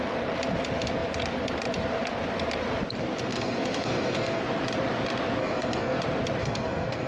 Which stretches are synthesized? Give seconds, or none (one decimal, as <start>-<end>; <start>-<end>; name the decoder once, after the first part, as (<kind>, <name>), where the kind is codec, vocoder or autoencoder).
3.3-4.4 (codec, SNAC); 5.4-6.0; 6.4-7.1